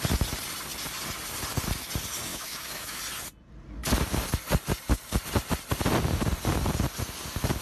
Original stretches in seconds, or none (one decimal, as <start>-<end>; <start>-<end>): 0.0-2.3; 3.0-7.6